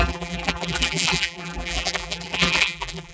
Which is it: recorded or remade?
remade